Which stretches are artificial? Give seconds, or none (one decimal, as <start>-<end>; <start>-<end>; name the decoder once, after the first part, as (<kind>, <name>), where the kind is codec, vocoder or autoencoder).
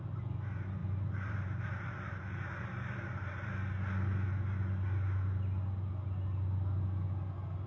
0.8-3.5 (vocoder, BigVGAN v2)